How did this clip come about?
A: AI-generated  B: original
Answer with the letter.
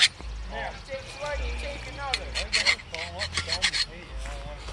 B